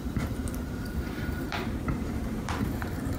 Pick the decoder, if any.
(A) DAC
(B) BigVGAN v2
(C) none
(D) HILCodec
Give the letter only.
B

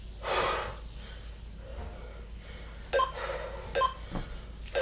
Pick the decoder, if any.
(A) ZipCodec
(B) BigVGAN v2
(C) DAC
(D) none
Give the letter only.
D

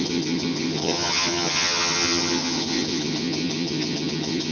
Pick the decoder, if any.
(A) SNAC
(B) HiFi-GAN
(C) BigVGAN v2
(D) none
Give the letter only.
B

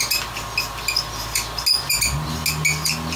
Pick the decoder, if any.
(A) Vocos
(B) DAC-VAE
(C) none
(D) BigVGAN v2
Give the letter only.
C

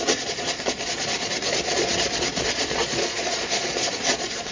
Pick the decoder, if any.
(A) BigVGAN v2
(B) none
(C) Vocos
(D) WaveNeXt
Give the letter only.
C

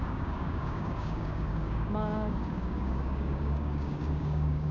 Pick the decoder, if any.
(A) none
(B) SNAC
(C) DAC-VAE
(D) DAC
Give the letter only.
D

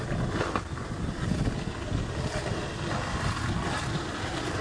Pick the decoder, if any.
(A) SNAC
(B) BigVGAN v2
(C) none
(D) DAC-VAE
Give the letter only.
C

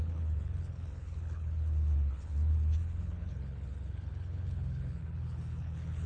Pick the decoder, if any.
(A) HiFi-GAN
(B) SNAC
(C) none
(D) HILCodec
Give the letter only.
D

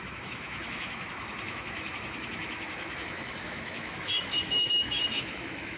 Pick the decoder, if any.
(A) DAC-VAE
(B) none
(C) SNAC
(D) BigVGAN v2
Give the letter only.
A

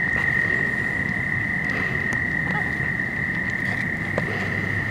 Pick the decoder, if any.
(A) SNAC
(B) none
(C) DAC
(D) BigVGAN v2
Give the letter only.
B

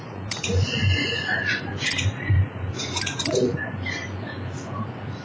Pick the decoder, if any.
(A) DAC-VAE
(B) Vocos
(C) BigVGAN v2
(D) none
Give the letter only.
B